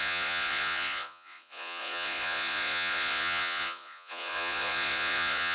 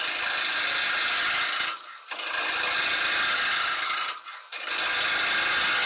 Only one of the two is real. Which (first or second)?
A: second